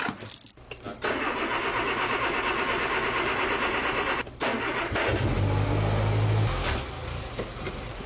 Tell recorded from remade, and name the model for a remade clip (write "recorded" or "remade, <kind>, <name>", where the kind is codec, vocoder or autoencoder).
recorded